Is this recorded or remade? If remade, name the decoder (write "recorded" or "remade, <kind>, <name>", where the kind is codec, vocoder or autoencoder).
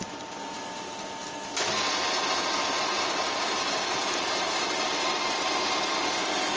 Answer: remade, vocoder, BigVGAN v2